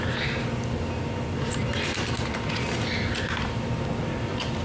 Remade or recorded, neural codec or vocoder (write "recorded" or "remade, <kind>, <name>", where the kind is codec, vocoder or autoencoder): recorded